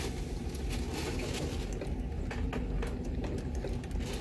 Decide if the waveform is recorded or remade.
recorded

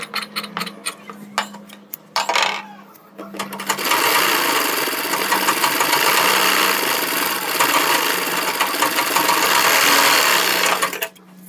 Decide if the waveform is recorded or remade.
recorded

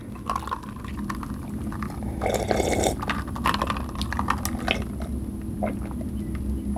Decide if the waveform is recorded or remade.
recorded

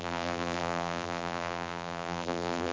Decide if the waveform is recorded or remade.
remade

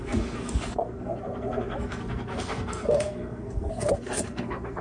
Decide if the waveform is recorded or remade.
remade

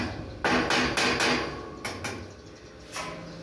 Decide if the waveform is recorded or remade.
recorded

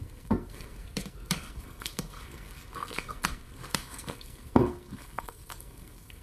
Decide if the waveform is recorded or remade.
remade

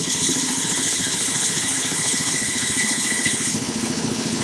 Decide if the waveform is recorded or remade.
remade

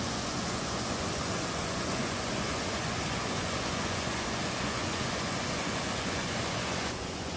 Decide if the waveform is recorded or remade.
remade